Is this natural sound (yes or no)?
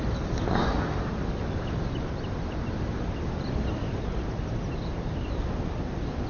yes